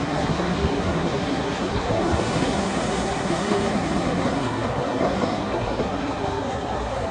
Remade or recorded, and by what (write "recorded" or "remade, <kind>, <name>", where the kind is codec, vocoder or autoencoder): remade, codec, SNAC